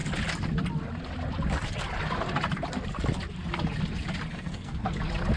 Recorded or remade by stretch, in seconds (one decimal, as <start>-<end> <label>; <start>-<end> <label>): 0.0-4.3 recorded; 4.3-5.0 remade; 5.0-5.4 recorded